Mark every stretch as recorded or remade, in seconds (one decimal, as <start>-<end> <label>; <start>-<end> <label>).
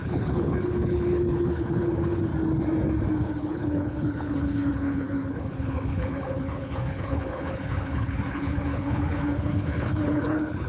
0.0-2.3 remade; 2.3-3.2 recorded; 3.2-10.7 remade